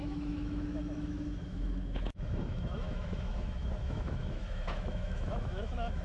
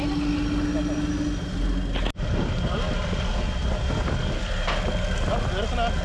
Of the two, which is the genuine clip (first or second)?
second